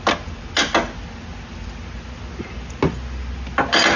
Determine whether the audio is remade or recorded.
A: recorded